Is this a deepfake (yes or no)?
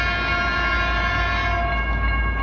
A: no